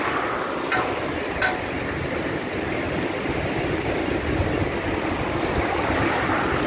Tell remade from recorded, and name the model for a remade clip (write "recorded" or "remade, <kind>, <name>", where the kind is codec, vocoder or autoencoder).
recorded